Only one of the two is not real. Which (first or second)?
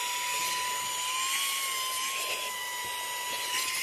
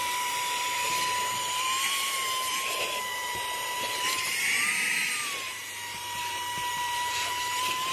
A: second